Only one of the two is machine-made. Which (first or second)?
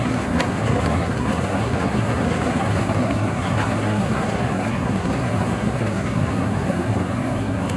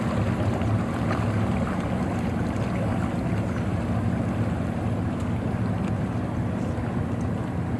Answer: first